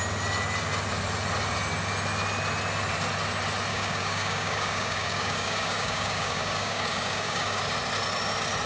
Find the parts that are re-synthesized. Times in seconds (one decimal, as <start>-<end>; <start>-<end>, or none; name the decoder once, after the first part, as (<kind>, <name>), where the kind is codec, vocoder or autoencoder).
3.7-7.6 (codec, DAC)